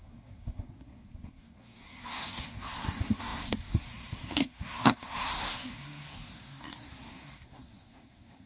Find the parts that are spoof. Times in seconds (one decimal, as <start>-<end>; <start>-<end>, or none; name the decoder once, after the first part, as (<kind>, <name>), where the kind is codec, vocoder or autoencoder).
0.0-8.5 (codec, SNAC)

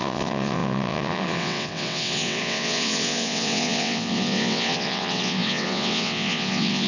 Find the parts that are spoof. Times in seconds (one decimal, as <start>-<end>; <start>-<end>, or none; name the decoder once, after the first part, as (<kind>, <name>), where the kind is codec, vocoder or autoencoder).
0.0-6.9 (vocoder, WaveNeXt)

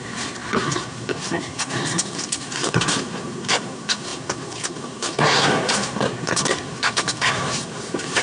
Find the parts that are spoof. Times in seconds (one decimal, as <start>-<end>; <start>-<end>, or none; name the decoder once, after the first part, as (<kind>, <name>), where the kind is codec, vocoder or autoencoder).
0.0-8.2 (codec, SNAC)